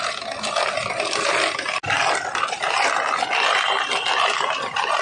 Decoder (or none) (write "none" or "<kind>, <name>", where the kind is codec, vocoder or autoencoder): none